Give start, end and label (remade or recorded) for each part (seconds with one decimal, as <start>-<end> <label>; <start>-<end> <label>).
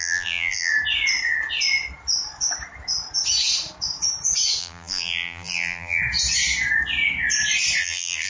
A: 0.0-0.7 remade; 0.7-4.6 recorded; 4.6-6.0 remade; 6.0-7.8 recorded; 7.8-8.3 remade